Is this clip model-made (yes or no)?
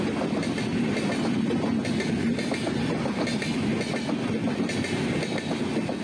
no